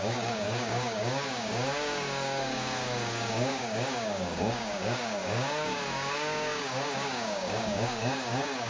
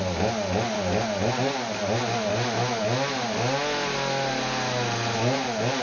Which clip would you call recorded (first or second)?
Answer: second